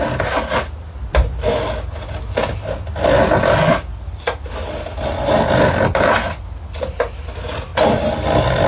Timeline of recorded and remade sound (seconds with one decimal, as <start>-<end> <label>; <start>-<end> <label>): 0.0-8.7 recorded